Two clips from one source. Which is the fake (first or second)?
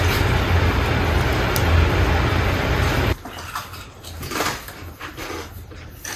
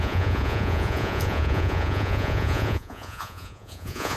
second